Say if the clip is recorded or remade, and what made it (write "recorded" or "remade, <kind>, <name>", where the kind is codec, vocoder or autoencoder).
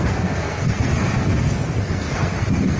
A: remade, codec, SNAC